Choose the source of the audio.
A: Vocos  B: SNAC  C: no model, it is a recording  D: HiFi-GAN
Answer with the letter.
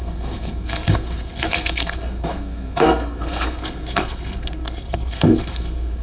B